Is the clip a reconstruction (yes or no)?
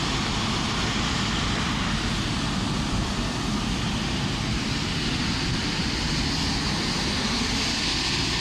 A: no